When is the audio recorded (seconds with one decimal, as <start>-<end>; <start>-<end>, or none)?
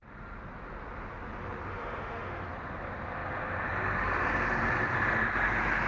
0.0-1.7; 2.5-5.9